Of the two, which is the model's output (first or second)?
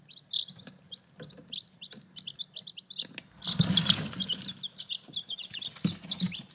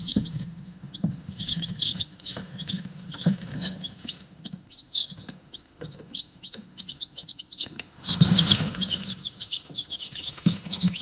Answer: second